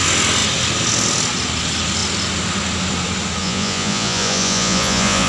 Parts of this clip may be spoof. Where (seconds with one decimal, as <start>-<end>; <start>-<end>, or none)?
3.4-5.3